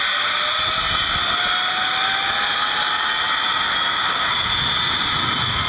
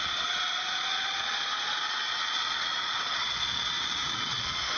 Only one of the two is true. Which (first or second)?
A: first